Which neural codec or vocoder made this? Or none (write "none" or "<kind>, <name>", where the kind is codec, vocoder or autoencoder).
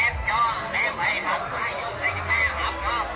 none